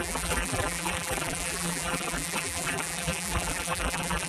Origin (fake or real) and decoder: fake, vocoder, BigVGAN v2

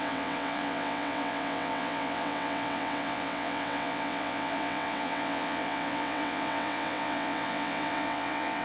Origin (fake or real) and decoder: fake, vocoder, WaveNeXt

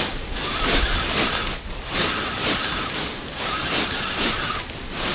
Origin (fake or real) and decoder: real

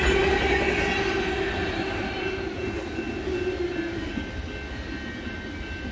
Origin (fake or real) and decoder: real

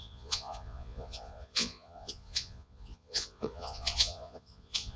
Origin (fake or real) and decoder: fake, vocoder, Vocos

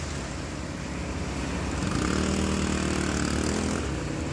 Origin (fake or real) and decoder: real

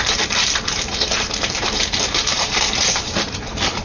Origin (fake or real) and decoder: fake, vocoder, BigVGAN v2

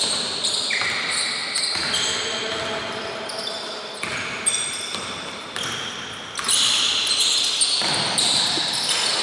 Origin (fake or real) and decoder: real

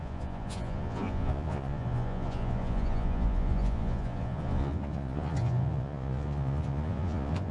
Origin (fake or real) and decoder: fake, vocoder, Vocos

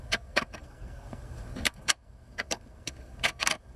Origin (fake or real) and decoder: fake, codec, SNAC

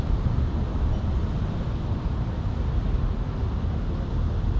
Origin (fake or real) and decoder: real